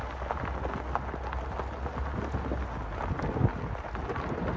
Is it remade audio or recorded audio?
recorded